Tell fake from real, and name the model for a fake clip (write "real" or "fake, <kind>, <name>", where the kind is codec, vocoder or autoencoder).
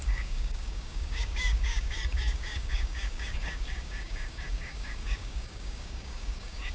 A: fake, codec, DAC